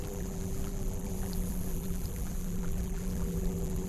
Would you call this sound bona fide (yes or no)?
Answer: no